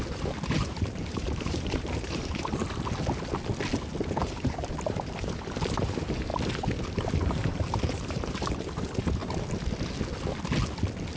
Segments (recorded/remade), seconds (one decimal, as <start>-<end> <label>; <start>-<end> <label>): 0.0-2.6 remade; 2.6-4.2 recorded; 4.2-9.2 remade; 9.2-11.2 recorded